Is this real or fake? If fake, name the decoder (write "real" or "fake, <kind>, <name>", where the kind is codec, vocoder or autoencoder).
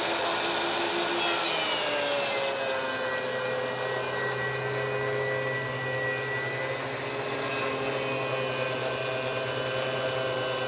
real